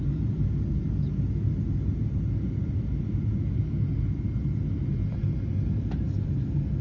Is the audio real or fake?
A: real